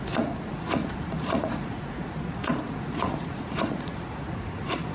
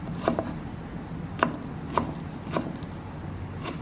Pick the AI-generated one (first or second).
first